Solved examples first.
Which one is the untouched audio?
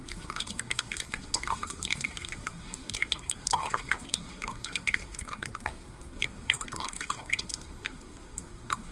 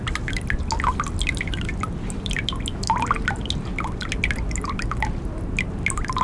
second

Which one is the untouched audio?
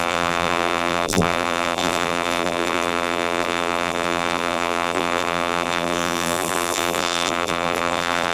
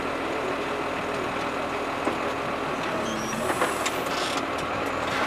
second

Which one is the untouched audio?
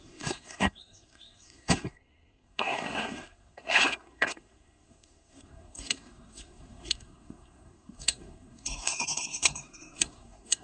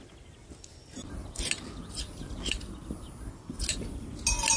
second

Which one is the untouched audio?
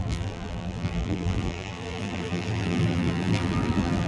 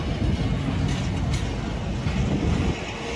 second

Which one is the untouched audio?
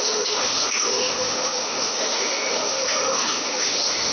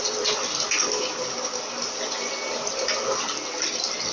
second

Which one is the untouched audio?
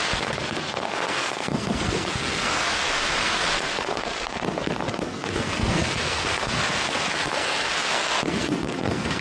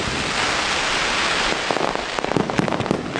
second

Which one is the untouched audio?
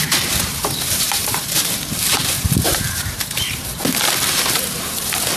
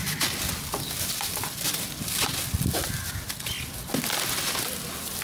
second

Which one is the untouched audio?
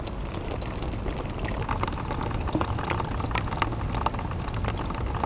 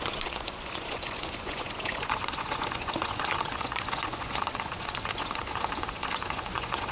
first